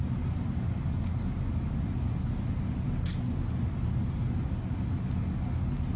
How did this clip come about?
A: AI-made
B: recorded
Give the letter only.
B